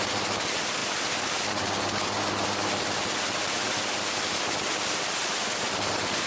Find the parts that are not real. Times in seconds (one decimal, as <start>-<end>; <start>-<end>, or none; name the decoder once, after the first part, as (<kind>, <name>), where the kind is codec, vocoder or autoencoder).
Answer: 0.8-4.6 (vocoder, BigVGAN v2)